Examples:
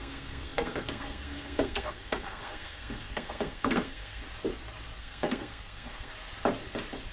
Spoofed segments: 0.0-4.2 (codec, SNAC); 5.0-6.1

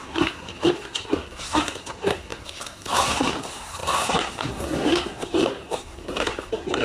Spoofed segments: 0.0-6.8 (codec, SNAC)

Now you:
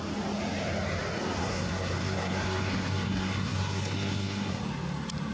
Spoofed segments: 1.4-4.6 (codec, SNAC)